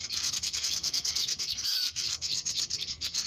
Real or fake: fake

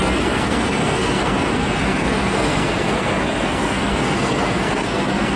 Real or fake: fake